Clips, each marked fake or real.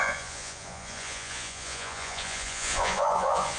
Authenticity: fake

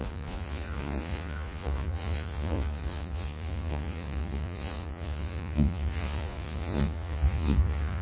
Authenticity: fake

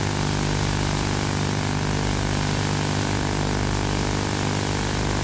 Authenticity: real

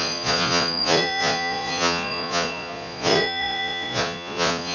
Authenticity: fake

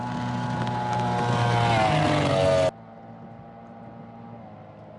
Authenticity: real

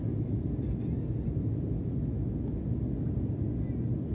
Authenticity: real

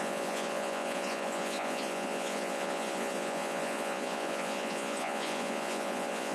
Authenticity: fake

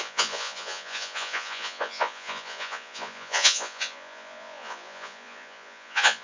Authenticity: fake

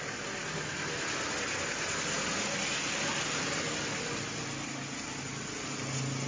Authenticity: real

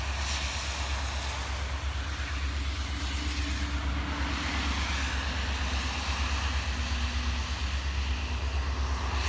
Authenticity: real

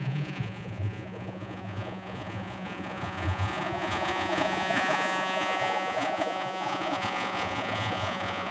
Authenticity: fake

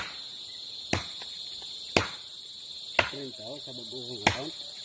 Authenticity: real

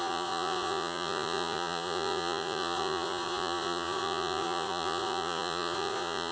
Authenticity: fake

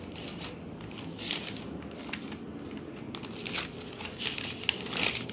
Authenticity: real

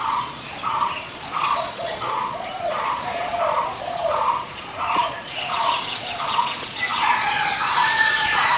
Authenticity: fake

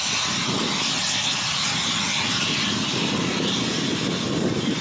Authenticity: real